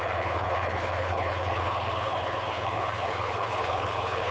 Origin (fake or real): fake